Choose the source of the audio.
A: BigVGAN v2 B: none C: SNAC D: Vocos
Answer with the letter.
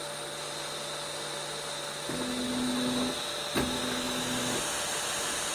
B